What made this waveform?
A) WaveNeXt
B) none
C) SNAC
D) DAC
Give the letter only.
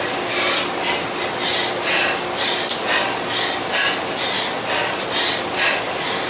B